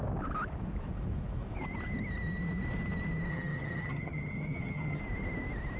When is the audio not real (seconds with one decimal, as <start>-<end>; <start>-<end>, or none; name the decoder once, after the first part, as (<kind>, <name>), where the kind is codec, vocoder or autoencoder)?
3.3-5.0 (vocoder, HiFi-GAN)